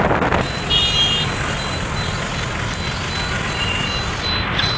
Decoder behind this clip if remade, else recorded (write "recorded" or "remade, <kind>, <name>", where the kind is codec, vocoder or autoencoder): recorded